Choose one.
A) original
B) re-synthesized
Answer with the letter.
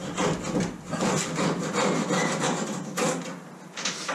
A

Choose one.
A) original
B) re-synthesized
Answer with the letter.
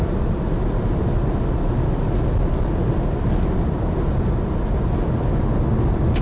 A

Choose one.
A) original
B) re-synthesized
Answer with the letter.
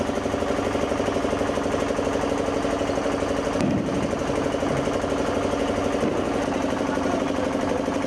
A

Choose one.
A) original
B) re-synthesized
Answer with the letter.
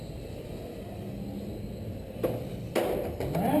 A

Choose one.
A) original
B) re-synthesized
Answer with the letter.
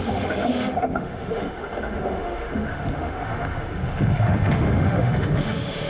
B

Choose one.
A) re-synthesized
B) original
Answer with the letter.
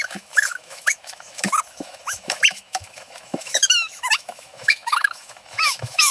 A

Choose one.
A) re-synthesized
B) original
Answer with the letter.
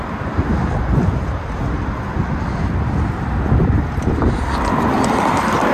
B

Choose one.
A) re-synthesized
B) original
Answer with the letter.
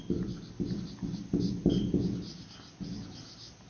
B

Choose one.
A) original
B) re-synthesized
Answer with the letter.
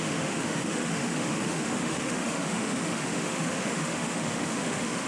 B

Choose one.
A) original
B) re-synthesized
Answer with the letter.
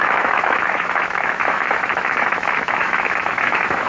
B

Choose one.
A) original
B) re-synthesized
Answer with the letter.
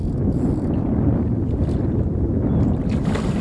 A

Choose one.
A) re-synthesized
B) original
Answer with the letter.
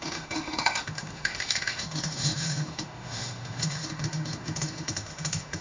A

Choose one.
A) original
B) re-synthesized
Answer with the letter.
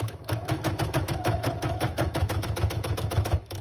B